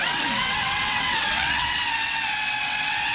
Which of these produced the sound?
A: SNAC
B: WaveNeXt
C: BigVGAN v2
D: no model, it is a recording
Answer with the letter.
B